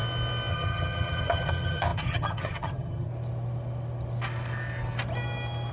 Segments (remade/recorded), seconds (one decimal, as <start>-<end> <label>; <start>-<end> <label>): 0.0-0.5 recorded; 0.5-3.1 remade; 3.1-5.7 recorded

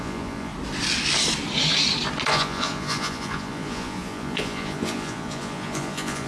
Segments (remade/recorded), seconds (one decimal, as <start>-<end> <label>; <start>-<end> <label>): 0.0-0.5 remade; 0.5-2.3 recorded; 2.3-6.3 remade

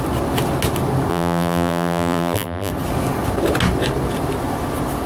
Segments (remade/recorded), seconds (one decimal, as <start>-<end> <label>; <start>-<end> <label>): 0.0-1.1 recorded; 1.1-2.7 remade; 2.7-5.1 recorded